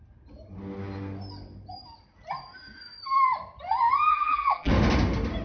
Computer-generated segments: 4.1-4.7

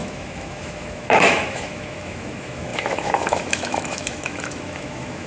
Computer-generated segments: 0.0-5.3

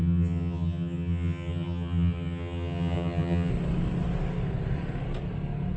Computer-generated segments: 0.0-3.5

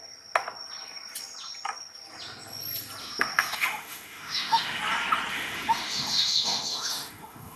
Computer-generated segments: 3.0-4.8; 5.3-7.6